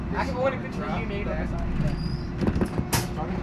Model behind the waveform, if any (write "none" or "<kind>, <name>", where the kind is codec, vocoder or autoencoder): none